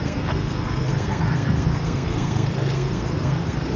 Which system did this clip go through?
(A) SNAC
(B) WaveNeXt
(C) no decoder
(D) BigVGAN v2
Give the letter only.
A